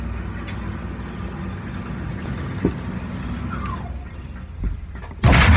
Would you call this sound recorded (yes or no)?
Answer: yes